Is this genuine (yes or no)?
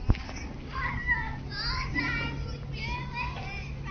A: yes